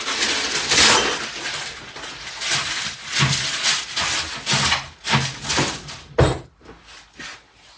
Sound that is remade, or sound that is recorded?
recorded